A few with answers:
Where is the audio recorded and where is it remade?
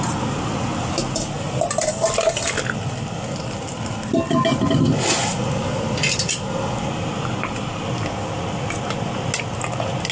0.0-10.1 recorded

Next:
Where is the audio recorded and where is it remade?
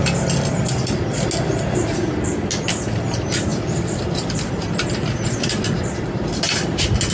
0.0-3.5 recorded; 3.5-6.6 remade; 6.6-7.1 recorded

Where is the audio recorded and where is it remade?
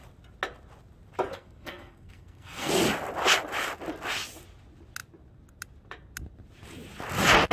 0.0-1.3 recorded; 1.3-2.7 remade; 2.7-7.5 recorded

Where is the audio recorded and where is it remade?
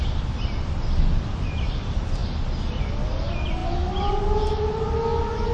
0.0-5.5 recorded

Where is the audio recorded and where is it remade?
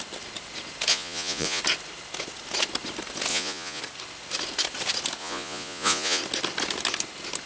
0.0-0.9 recorded; 0.9-1.6 remade; 1.6-3.3 recorded; 3.3-3.8 remade; 3.8-5.2 recorded; 5.2-6.2 remade; 6.2-7.5 recorded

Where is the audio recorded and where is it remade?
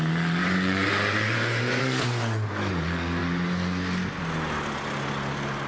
0.0-0.4 recorded; 0.4-1.8 remade; 1.8-5.7 recorded